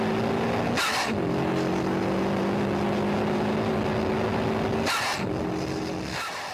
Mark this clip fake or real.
real